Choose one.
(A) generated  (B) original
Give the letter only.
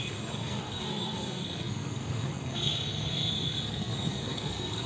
A